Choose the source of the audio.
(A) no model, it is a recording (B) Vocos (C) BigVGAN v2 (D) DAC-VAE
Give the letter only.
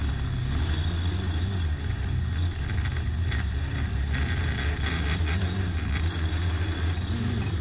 A